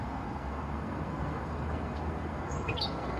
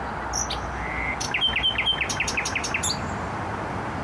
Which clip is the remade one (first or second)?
first